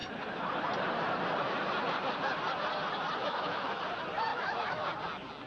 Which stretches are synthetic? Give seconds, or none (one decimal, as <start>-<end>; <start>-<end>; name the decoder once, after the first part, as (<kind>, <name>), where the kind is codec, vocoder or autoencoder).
3.2-3.8 (autoencoder, DAC-VAE); 4.3-4.9